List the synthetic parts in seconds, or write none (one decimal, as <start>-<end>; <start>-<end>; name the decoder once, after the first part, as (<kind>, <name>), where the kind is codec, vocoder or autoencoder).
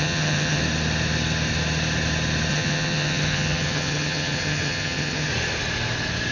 0.0-0.6 (vocoder, HiFi-GAN); 2.5-5.3